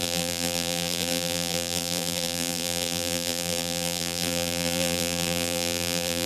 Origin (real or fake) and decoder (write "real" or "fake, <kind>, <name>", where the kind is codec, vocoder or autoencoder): fake, vocoder, BigVGAN v2